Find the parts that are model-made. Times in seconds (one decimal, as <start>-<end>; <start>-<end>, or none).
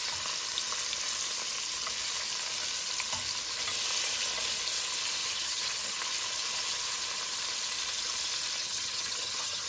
5.2-6.0; 8.6-9.7